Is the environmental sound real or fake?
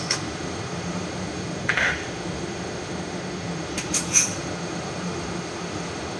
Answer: fake